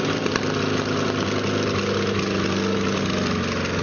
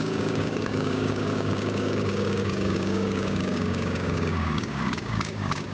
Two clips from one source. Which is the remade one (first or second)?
second